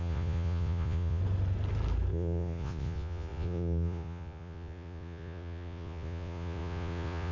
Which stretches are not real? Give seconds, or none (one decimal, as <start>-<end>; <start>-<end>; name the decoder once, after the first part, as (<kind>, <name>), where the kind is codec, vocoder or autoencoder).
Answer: 0.0-1.2 (vocoder, Vocos); 2.1-7.3